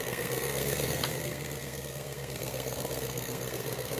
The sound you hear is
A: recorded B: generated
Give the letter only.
B